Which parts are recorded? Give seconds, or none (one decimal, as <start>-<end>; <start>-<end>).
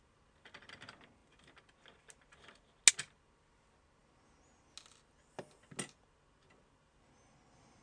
0.0-7.8